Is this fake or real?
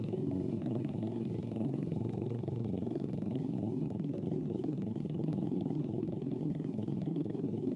fake